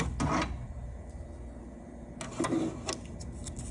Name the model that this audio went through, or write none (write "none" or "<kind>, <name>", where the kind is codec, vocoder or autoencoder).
none